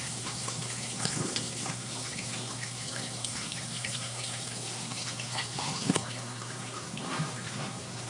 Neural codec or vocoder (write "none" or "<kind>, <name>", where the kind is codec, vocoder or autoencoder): codec, SNAC